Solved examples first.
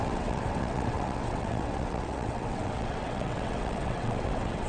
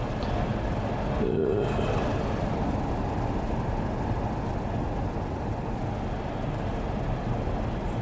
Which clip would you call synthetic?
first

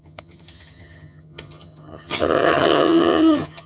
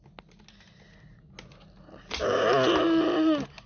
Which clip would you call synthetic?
first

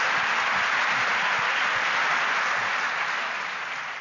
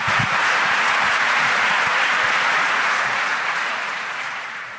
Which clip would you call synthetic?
second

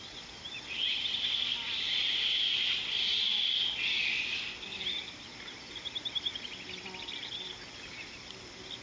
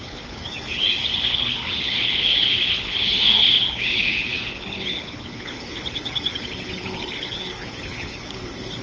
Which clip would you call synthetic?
second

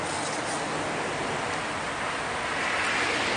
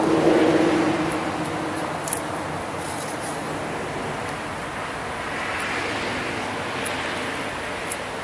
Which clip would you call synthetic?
first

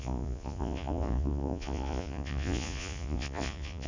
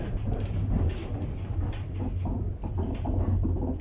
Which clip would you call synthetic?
first